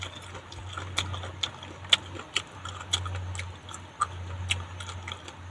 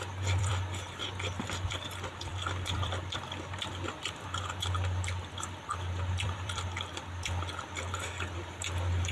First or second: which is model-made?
second